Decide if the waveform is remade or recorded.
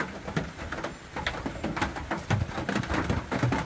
recorded